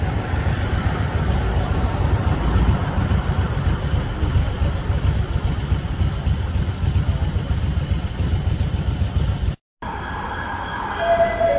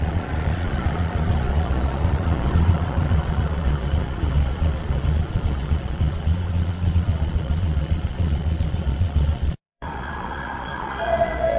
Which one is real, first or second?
first